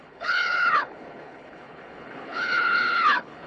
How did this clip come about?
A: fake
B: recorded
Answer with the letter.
A